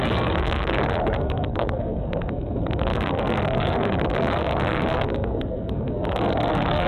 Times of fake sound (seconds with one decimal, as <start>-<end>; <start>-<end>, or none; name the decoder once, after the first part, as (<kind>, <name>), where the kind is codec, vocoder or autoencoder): 0.0-6.9 (codec, SNAC)